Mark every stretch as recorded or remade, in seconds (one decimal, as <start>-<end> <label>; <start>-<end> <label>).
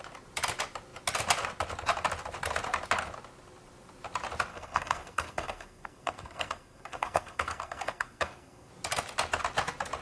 0.0-4.5 recorded; 4.5-8.7 remade; 8.7-10.0 recorded